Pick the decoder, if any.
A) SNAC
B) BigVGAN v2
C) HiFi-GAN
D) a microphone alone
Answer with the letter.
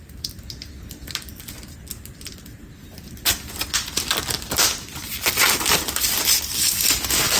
D